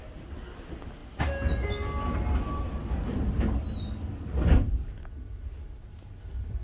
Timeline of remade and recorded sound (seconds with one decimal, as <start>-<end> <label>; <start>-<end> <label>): 0.0-6.6 recorded